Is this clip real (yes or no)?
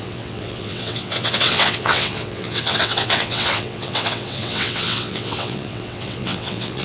no